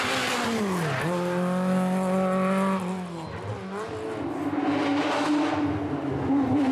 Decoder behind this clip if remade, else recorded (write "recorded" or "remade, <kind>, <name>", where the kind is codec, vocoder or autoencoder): recorded